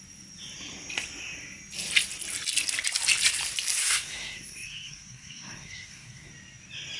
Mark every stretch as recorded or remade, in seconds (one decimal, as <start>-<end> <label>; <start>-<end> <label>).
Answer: 0.0-3.8 recorded; 3.8-6.3 remade; 6.3-7.0 recorded